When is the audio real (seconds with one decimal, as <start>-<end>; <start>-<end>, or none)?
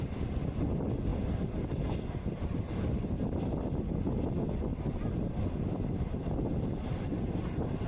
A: 0.0-4.7; 5.2-7.9